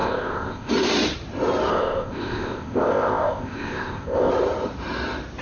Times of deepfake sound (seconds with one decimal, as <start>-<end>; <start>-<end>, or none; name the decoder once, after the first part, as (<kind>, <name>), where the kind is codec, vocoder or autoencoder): 0.0-0.7 (codec, ZipCodec); 1.7-4.3

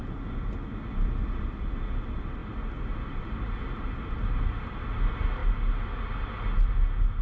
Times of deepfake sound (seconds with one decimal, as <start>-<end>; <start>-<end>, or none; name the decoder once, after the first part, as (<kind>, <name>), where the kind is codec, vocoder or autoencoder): none

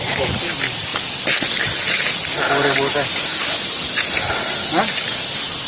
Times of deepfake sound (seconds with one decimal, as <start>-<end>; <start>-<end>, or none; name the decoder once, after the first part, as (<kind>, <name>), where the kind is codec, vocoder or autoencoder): none

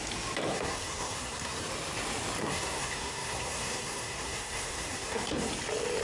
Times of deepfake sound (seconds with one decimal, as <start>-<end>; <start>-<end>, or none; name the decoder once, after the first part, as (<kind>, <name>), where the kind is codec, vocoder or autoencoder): 0.5-1.6 (codec, SNAC); 2.4-5.5